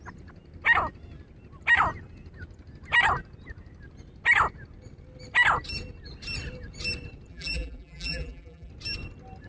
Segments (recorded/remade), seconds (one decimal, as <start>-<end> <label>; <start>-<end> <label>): 0.0-7.3 recorded; 7.3-8.7 remade; 8.7-9.5 recorded